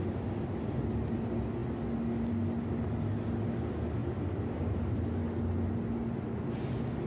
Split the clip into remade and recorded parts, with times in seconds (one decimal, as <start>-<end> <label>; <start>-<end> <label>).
0.0-7.1 recorded